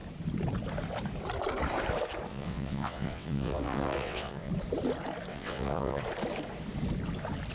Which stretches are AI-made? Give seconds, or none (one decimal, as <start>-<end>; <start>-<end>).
2.3-4.5; 5.3-6.0